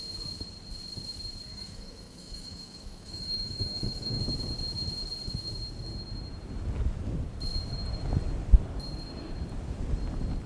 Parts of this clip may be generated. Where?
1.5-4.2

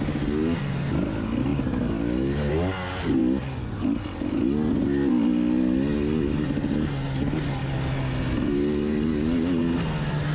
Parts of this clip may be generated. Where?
none

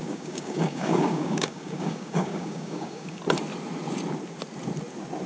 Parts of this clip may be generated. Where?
0.0-3.2

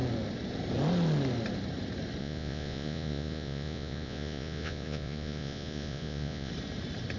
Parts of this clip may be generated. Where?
2.2-6.5

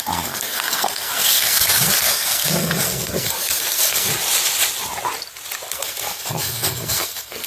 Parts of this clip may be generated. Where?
0.0-4.1; 5.7-7.5